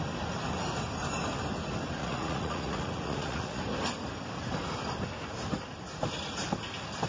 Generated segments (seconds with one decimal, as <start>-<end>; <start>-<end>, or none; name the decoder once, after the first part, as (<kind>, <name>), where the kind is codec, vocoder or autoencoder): 2.0-3.6 (vocoder, Vocos)